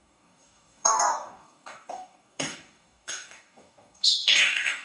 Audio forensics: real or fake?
fake